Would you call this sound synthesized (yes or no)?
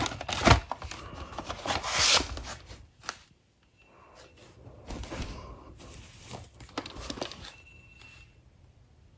no